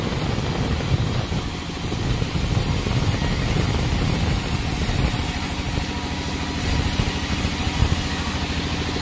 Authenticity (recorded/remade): recorded